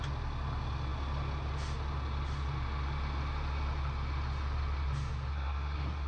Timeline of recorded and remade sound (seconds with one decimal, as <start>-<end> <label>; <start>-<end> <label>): 0.0-5.3 recorded; 5.3-6.1 remade